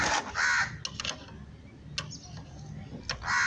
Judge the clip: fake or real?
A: real